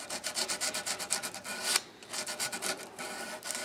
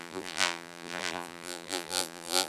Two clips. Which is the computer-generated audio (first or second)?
second